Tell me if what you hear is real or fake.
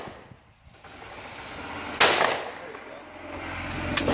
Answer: real